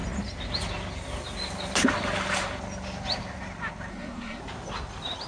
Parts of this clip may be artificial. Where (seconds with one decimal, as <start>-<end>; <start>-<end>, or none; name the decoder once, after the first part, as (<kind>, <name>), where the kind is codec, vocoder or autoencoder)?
3.9-4.4 (codec, SNAC)